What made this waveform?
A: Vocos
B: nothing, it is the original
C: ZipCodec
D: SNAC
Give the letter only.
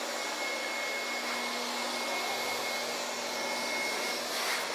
B